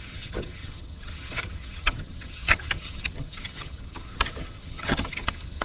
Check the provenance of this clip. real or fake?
fake